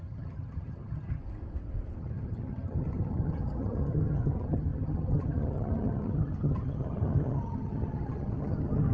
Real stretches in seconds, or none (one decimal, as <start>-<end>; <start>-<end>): 1.2-2.0